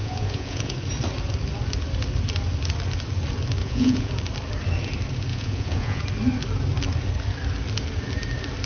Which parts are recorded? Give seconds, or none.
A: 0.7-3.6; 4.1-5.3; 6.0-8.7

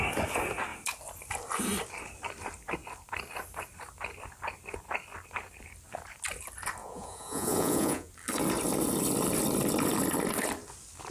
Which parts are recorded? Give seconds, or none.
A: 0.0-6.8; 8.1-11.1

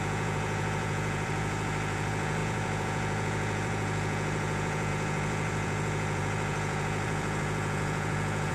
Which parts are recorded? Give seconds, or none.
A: none

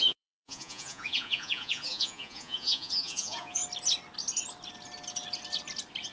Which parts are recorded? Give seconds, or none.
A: 3.6-6.1